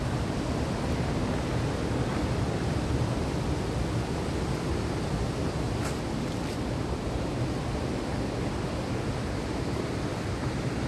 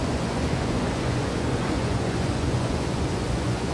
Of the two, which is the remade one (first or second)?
second